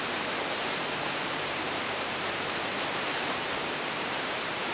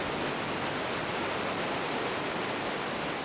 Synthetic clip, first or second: first